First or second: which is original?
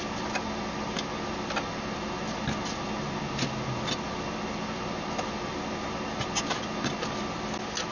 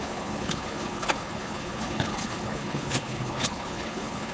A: first